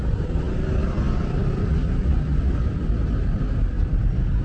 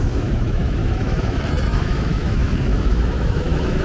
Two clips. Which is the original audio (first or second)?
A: first